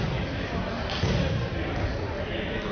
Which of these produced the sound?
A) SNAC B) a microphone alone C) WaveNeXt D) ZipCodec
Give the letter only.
B